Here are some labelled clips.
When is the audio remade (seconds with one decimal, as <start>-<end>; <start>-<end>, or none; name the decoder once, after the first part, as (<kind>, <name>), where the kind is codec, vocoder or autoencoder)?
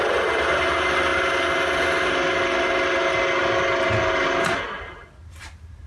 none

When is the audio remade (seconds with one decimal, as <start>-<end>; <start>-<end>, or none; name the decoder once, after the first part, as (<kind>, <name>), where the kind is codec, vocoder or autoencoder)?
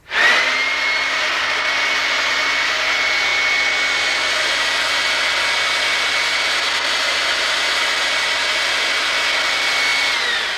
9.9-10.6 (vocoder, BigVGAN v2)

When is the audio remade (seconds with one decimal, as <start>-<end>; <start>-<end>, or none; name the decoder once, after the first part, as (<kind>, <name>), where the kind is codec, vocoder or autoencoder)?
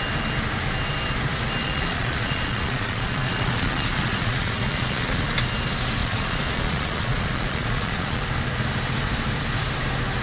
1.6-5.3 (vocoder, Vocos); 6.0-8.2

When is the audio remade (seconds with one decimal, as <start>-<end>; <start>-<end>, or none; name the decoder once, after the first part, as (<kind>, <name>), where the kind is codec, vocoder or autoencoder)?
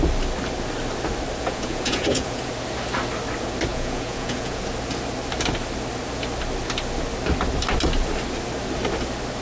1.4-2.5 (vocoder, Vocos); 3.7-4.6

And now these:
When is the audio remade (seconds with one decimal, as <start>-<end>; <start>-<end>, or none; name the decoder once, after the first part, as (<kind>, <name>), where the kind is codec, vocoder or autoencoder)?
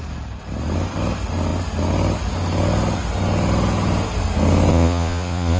4.7-5.6 (vocoder, Vocos)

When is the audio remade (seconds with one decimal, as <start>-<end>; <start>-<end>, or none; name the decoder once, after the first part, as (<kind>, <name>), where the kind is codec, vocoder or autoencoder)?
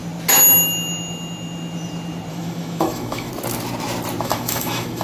2.3-3.3 (autoencoder, DAC-VAE); 4.2-5.0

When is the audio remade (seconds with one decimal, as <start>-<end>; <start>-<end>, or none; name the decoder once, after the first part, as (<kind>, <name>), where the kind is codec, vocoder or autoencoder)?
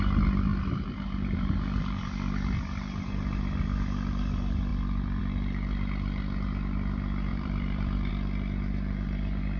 0.5-2.0 (vocoder, BigVGAN v2); 4.7-5.2; 7.3-8.1